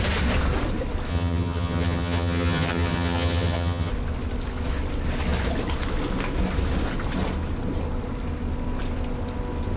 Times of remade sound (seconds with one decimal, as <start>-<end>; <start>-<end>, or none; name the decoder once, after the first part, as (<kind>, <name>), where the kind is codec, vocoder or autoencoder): 1.1-3.9 (vocoder, HiFi-GAN)